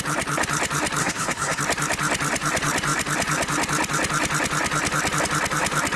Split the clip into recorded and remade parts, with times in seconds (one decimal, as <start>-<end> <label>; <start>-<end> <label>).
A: 0.0-1.0 recorded; 1.0-1.6 remade; 1.6-6.0 recorded